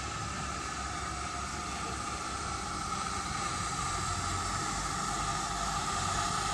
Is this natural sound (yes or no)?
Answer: yes